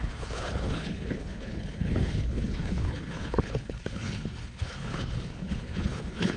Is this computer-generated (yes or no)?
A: yes